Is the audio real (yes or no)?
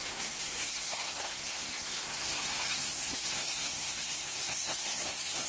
no